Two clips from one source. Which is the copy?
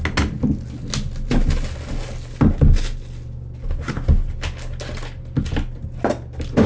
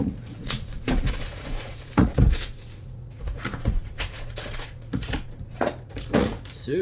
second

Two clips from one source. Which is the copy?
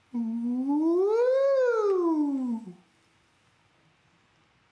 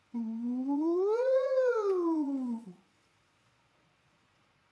second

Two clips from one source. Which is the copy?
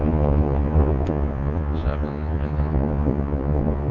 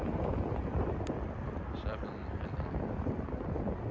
first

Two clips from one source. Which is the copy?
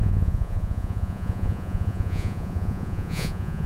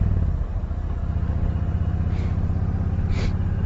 first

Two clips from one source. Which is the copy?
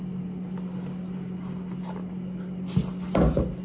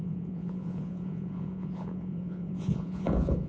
second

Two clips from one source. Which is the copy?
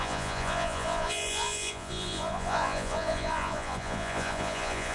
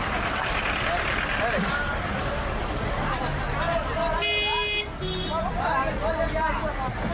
first